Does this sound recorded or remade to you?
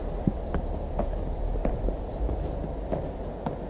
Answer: recorded